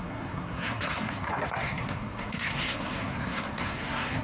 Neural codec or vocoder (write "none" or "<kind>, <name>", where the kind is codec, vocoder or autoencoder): codec, SNAC